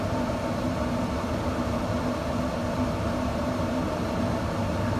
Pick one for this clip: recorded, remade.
recorded